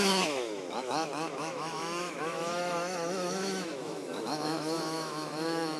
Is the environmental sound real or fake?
fake